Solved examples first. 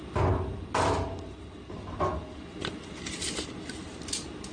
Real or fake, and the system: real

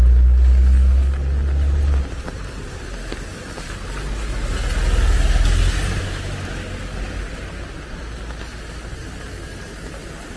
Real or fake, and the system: real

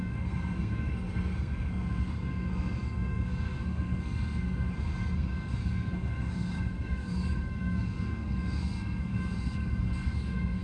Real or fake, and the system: fake, codec, SNAC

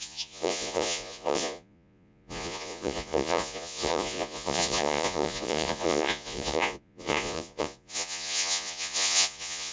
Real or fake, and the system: fake, vocoder, Vocos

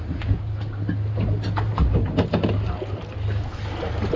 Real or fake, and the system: real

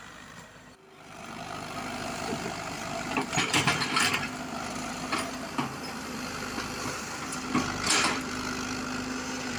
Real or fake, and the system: fake, vocoder, BigVGAN v2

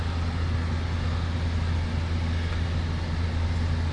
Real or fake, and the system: real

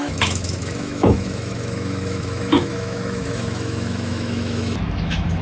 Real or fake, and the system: fake, autoencoder, DAC-VAE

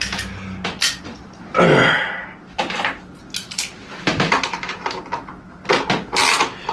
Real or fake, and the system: real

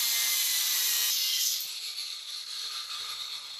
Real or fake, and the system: fake, vocoder, BigVGAN v2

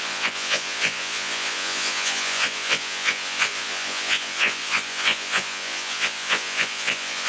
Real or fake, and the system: fake, vocoder, Vocos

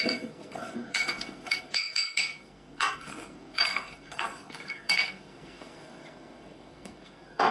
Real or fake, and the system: fake, codec, SNAC